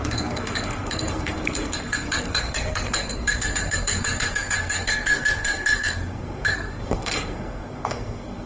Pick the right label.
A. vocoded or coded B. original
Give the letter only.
A